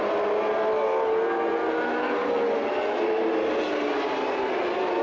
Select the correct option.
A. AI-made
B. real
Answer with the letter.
B